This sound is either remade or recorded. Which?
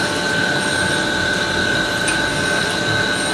recorded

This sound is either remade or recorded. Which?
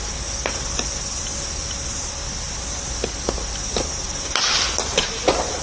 recorded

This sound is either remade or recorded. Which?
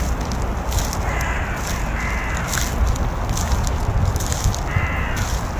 recorded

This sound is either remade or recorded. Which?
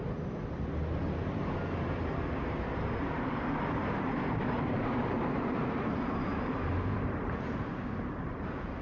remade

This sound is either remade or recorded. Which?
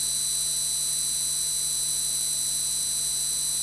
recorded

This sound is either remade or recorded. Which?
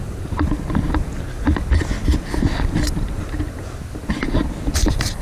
recorded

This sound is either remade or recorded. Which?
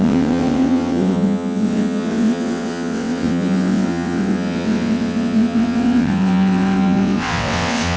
remade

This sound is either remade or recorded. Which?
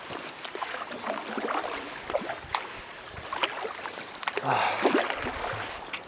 recorded